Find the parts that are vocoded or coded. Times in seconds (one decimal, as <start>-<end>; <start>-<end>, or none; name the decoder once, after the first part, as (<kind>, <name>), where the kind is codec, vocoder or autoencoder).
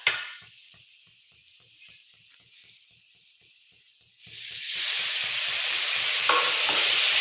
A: 0.0-7.2 (vocoder, BigVGAN v2)